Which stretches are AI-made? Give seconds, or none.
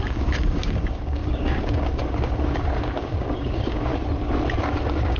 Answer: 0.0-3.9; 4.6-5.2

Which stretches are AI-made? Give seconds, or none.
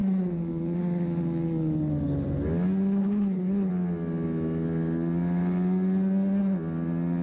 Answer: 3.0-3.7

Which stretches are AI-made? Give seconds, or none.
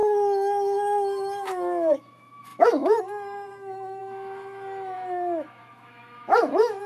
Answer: 0.0-6.9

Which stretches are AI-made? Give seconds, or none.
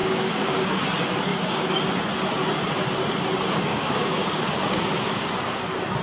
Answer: 0.0-0.8; 1.3-1.8; 3.7-4.8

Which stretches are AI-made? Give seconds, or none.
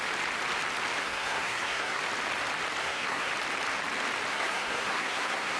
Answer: 1.0-2.0; 2.8-3.3; 4.3-5.6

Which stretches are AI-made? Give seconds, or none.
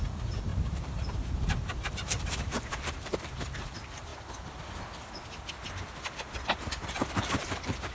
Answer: 0.0-4.1; 6.6-7.9